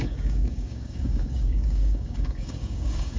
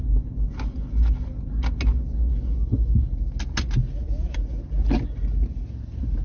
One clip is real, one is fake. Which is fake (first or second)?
first